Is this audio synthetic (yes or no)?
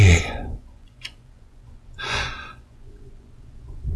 yes